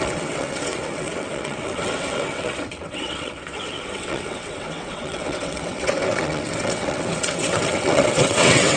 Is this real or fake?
fake